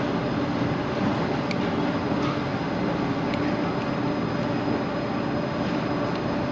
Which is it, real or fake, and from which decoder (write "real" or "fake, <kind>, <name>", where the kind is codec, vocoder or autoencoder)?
real